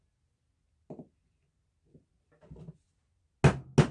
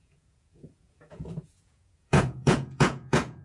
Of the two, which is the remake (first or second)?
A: second